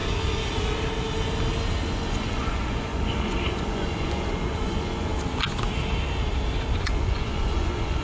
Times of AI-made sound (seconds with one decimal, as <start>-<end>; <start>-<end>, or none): 1.9-5.1; 6.8-8.0